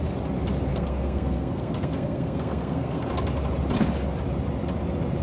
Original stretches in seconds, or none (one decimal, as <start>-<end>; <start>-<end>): 0.0-0.7; 3.1-5.2